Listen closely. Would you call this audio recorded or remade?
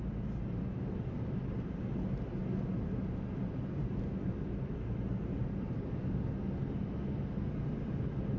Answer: recorded